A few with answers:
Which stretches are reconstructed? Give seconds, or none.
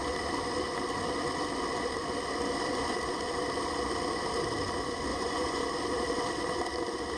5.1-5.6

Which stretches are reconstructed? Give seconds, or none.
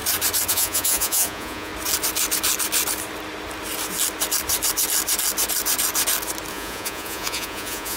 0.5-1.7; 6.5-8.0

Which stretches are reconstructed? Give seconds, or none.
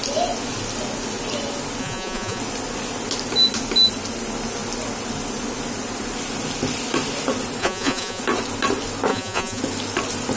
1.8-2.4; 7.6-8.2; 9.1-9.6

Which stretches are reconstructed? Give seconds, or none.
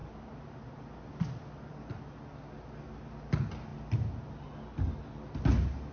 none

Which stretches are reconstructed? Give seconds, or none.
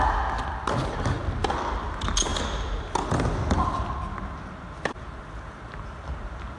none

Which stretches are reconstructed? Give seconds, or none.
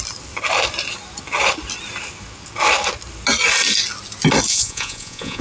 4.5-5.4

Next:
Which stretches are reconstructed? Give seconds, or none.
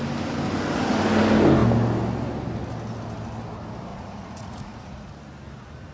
3.9-5.1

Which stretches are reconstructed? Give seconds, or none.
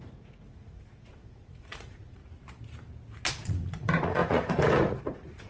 0.0-2.2; 3.3-5.5